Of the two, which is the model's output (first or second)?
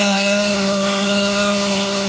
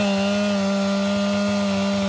first